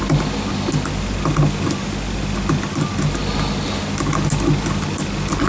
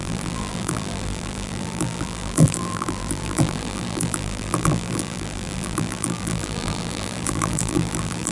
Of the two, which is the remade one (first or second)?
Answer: second